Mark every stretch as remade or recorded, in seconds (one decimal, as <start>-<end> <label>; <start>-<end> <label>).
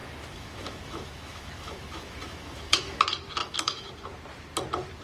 0.0-3.0 remade; 3.0-3.4 recorded; 3.4-3.9 remade; 3.9-5.0 recorded